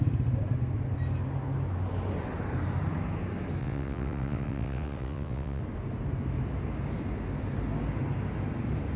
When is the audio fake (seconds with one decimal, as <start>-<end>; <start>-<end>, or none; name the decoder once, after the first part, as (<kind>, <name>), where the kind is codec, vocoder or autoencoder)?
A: 3.6-5.6 (vocoder, WaveNeXt)